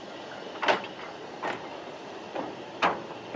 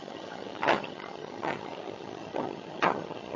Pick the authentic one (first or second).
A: first